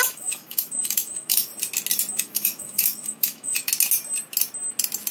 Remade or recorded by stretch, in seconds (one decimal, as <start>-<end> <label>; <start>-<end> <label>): 0.0-1.5 remade; 1.5-2.1 recorded; 2.1-3.7 remade; 3.7-5.1 recorded